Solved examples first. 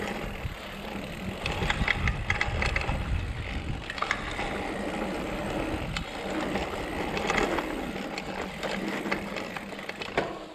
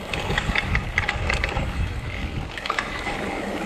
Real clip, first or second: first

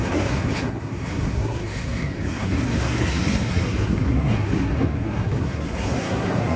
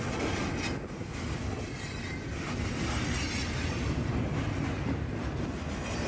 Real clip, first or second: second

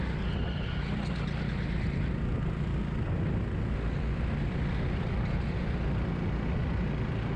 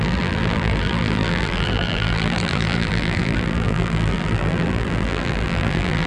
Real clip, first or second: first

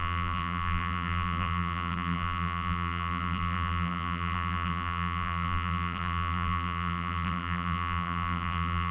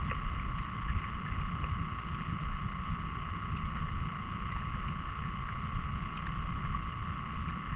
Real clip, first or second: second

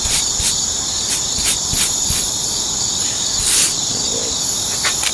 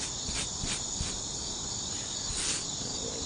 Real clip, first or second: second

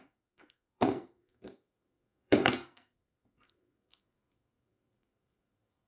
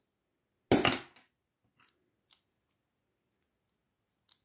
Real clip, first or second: second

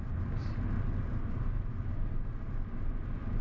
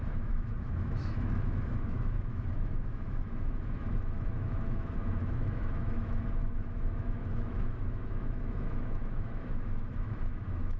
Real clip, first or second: first